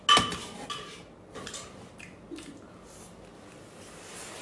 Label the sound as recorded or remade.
recorded